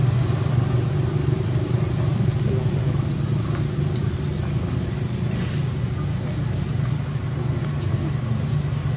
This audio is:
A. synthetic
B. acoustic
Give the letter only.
B